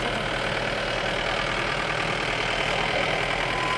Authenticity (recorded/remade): recorded